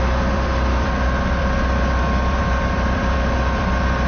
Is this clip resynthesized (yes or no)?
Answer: yes